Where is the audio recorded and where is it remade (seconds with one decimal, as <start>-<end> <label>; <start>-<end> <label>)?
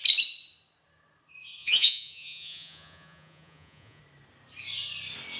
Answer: 0.0-1.6 recorded; 1.6-4.0 remade; 4.0-5.4 recorded